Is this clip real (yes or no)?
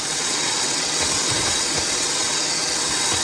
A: no